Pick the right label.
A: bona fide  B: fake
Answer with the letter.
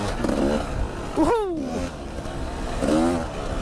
A